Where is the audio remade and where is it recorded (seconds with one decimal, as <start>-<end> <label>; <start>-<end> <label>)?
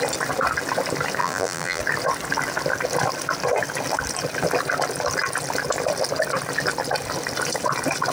0.0-1.2 recorded; 1.2-1.8 remade; 1.8-8.1 recorded